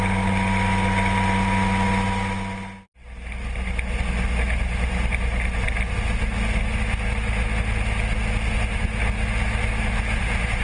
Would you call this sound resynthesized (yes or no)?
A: no